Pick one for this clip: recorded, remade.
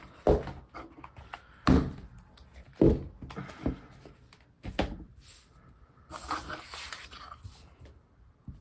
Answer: recorded